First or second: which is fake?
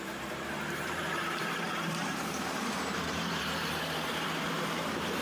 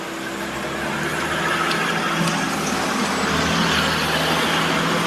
first